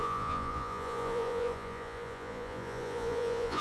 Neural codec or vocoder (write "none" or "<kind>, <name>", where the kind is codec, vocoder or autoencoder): vocoder, Vocos